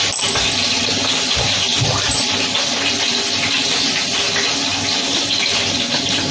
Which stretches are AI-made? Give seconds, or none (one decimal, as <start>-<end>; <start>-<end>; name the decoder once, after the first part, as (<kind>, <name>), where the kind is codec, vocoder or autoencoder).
1.7-2.6 (vocoder, BigVGAN v2)